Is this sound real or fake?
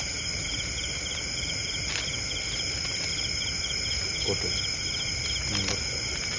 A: real